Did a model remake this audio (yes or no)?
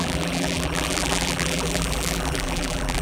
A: yes